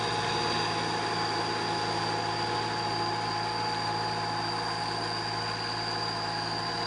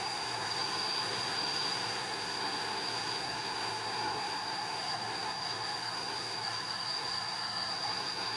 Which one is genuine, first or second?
first